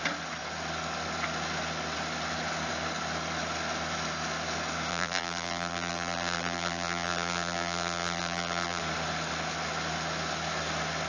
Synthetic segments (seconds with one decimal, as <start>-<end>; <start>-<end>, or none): 4.9-8.8